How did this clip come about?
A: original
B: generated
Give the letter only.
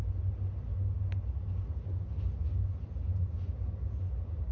A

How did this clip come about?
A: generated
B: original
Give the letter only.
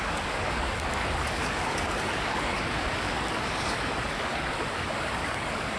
A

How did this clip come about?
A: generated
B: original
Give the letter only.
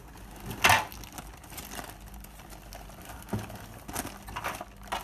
B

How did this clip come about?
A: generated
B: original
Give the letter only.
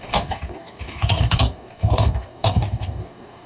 A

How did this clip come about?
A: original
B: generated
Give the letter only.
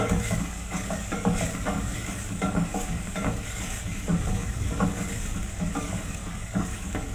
B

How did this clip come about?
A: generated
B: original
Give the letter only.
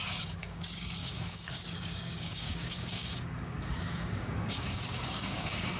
A